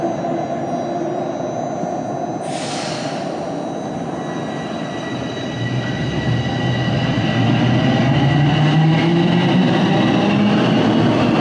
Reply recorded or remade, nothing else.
recorded